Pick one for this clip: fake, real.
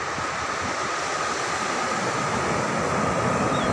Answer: real